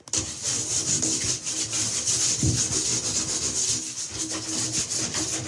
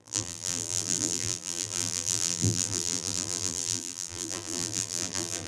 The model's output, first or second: second